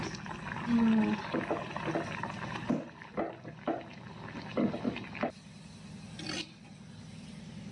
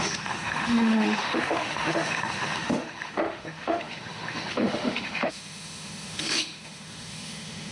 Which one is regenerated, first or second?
second